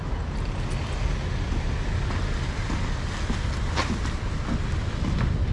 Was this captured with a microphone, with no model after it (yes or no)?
yes